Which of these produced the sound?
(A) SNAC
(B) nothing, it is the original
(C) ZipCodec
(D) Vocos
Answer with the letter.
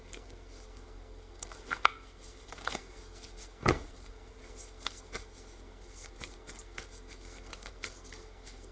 A